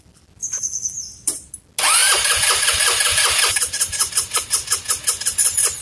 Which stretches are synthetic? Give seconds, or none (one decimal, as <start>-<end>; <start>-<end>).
2.0-4.1